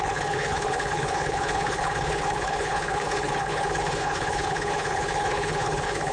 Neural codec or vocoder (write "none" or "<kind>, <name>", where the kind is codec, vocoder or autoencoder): codec, HILCodec